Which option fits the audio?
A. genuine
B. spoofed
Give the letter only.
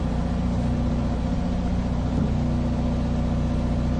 A